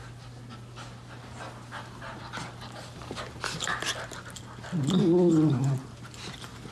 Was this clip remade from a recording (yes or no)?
no